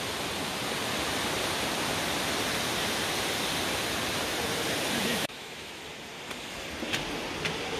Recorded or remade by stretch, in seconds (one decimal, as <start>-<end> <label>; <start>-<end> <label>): 0.0-5.1 recorded; 5.1-5.8 remade; 5.8-7.8 recorded